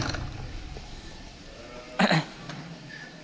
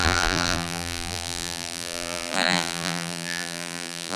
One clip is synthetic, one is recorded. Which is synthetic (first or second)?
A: second